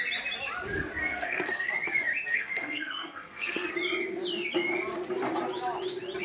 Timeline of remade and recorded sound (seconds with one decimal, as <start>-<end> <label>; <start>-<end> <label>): 0.0-1.0 recorded; 1.0-1.7 remade; 1.7-2.3 recorded; 2.3-3.7 remade; 3.7-6.2 recorded